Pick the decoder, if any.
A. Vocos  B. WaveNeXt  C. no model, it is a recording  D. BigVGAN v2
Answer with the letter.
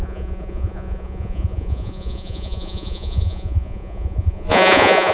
A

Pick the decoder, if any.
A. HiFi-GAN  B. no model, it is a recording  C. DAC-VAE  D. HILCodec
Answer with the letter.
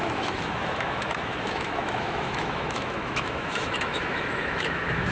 C